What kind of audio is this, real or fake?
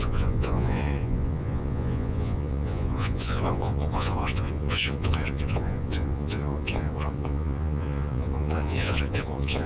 fake